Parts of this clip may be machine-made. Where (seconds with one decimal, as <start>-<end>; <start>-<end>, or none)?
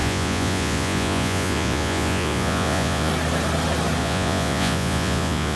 0.0-3.1; 4.0-5.6